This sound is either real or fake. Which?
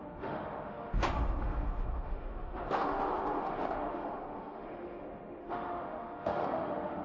fake